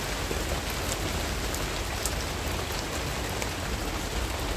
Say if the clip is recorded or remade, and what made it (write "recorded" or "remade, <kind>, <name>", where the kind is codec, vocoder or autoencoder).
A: recorded